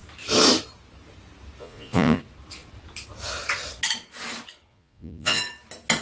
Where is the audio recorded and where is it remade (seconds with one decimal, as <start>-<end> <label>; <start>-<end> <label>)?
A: 0.0-1.6 recorded; 1.6-2.2 remade; 2.2-4.7 recorded; 4.7-5.4 remade; 5.4-6.0 recorded